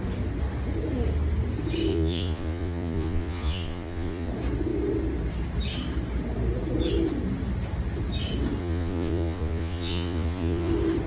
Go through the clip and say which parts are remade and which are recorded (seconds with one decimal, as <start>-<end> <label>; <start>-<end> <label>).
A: 0.0-1.9 recorded; 1.9-4.3 remade; 4.3-8.6 recorded; 8.6-10.7 remade; 10.7-11.1 recorded